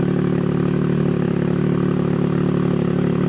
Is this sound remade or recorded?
recorded